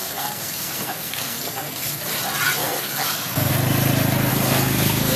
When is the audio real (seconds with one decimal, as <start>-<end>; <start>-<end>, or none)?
2.0-2.6; 3.5-4.3